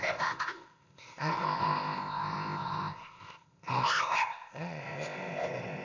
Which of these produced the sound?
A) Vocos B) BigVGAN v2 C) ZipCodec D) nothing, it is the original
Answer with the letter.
C